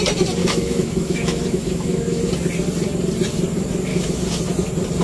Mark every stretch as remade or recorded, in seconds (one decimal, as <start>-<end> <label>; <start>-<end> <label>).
0.0-0.4 recorded; 0.4-2.2 remade; 2.2-3.9 recorded; 3.9-4.4 remade; 4.4-5.0 recorded